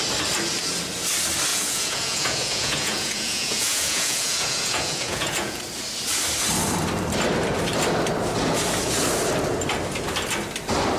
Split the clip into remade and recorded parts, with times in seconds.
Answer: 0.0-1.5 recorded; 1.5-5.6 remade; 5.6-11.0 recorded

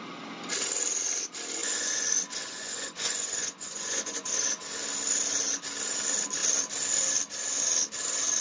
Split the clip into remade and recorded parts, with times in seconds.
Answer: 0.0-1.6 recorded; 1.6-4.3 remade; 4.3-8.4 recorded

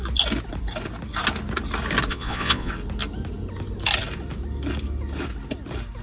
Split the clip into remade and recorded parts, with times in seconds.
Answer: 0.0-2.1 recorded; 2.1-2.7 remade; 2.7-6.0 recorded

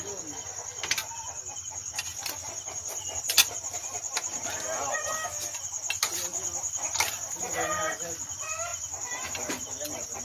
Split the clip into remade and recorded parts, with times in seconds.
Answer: 0.0-10.2 recorded

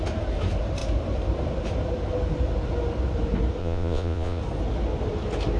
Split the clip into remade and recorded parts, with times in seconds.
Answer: 0.0-3.6 recorded; 3.6-4.4 remade; 4.4-5.6 recorded

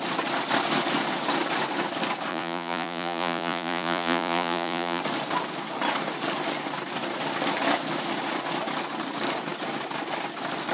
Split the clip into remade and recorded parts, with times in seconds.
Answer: 0.0-2.3 recorded; 2.3-5.0 remade; 5.0-10.7 recorded